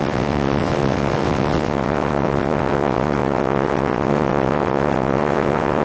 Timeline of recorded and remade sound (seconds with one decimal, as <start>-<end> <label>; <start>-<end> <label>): 0.0-5.8 remade

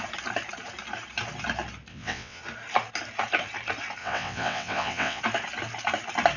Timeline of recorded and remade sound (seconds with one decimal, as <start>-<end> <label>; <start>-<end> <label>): 0.0-1.9 recorded; 1.9-2.4 remade; 2.4-4.0 recorded; 4.0-5.2 remade; 5.2-6.4 recorded